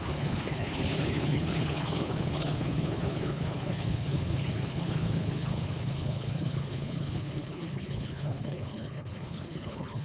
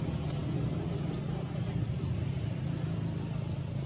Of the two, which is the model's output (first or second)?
first